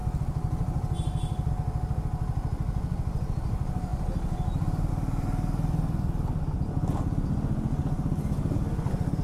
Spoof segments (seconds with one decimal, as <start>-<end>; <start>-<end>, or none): 3.9-4.9

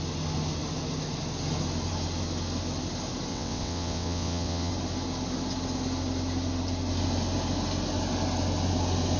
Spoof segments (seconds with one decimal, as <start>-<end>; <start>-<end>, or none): 3.3-4.7

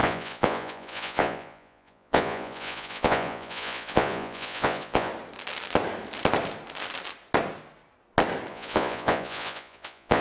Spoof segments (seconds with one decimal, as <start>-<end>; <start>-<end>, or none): 0.0-5.1; 8.5-10.2

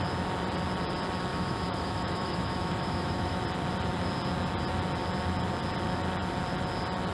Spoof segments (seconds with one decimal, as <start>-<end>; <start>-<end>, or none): 1.3-3.4